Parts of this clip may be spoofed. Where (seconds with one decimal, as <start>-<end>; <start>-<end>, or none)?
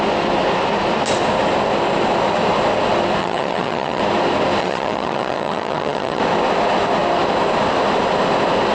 3.2-4.0; 4.6-6.2